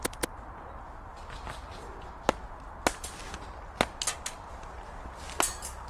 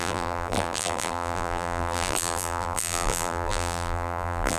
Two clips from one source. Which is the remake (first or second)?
second